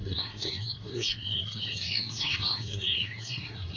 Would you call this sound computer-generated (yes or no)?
yes